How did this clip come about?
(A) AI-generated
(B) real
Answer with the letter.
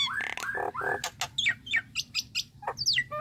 B